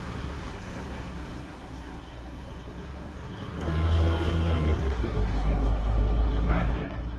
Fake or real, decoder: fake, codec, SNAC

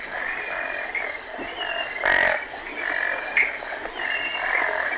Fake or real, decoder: real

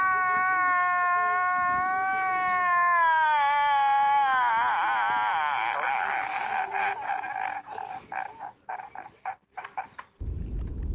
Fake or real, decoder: real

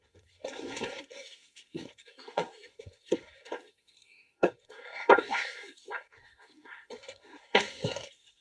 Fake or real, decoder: fake, codec, SNAC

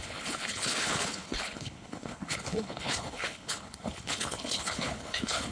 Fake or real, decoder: fake, codec, HILCodec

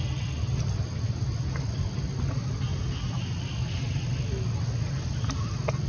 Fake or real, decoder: real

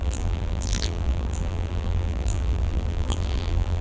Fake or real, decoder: fake, vocoder, BigVGAN v2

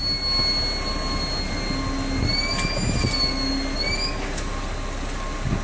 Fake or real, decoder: real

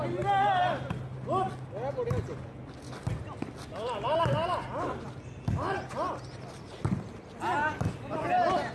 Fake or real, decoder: real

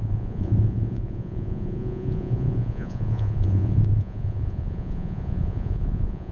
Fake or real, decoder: fake, vocoder, Vocos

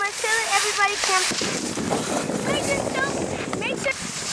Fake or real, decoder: real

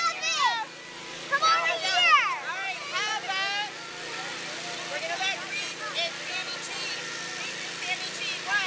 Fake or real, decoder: real